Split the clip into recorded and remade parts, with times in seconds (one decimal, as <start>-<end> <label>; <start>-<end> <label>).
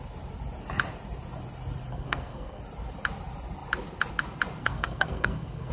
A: 0.0-1.9 recorded; 1.9-2.6 remade; 2.6-4.6 recorded; 4.6-5.7 remade